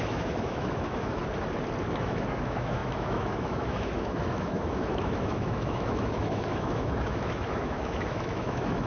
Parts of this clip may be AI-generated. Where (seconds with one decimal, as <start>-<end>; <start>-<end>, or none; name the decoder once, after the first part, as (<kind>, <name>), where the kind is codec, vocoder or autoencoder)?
0.0-1.2 (autoencoder, DAC-VAE); 1.8-8.9